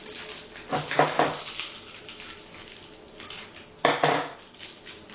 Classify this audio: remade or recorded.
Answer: recorded